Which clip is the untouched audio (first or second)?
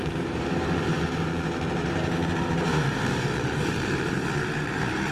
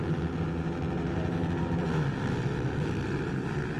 second